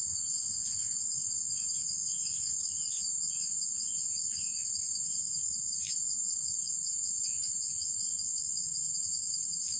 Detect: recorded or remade remade